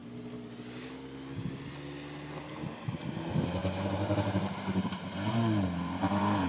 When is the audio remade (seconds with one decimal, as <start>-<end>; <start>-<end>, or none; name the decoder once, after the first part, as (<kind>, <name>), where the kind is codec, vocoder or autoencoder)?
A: 3.0-6.5 (vocoder, BigVGAN v2)